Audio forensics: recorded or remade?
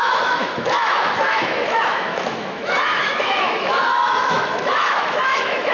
remade